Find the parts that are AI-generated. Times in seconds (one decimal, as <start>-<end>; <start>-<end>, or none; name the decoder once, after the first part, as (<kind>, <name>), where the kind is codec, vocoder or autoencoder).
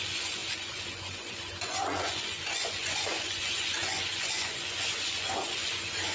0.0-6.1 (vocoder, Vocos)